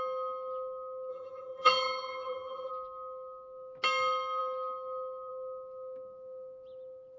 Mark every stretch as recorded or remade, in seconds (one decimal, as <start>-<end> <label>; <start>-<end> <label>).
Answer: 0.0-1.1 recorded; 1.1-2.7 remade; 2.7-7.2 recorded